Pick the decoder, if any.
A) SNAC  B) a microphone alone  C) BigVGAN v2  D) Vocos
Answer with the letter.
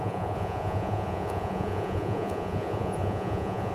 D